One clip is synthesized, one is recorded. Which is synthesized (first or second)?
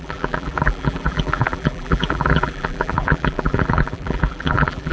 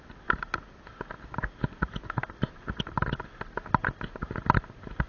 first